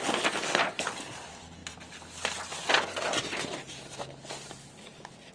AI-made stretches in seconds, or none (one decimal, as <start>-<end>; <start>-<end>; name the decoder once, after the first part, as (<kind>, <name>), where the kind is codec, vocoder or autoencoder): none